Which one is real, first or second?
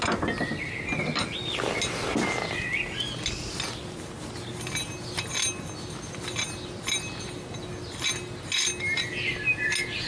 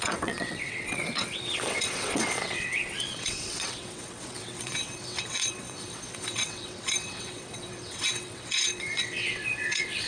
first